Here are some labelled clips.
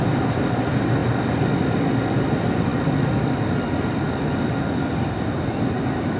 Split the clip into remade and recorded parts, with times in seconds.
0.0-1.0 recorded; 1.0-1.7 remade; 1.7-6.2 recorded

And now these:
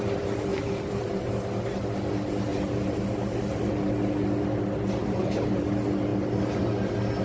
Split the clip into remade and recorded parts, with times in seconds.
0.0-0.5 recorded; 0.5-1.3 remade; 1.3-2.5 recorded; 2.5-3.7 remade; 3.7-5.0 recorded; 5.0-5.6 remade; 5.6-7.2 recorded

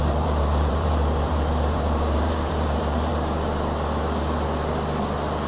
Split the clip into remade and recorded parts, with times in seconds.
0.0-3.1 remade; 3.1-5.5 recorded

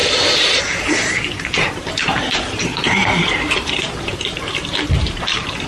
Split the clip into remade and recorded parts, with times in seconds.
0.0-5.7 remade

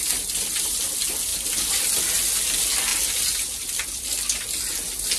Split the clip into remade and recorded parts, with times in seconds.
0.0-5.2 recorded

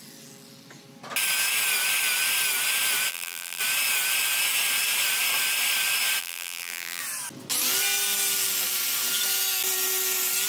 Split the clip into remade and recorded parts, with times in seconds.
0.0-3.1 recorded; 3.1-3.6 remade; 3.6-6.2 recorded; 6.2-7.0 remade; 7.0-10.5 recorded